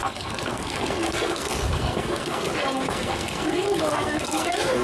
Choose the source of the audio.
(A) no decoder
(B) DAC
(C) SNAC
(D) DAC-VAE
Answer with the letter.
C